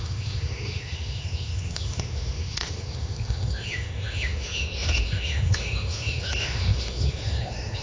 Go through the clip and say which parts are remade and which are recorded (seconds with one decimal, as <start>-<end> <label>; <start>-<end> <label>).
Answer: 0.0-7.8 remade